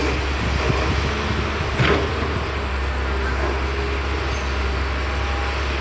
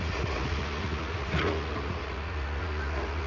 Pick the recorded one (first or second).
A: first